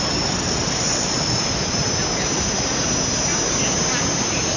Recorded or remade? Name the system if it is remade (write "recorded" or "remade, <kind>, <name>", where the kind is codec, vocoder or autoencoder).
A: recorded